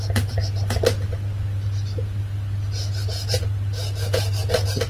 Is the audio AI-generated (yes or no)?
no